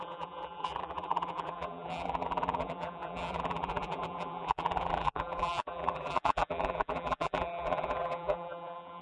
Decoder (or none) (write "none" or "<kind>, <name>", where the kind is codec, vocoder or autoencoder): vocoder, BigVGAN v2